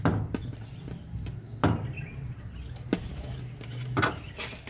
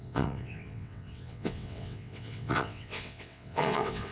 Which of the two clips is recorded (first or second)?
first